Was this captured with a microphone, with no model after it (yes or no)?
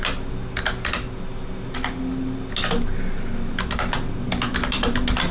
yes